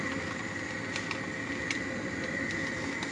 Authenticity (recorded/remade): recorded